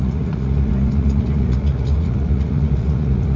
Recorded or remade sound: remade